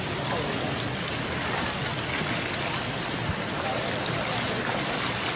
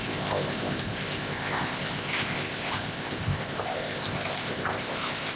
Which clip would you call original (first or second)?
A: first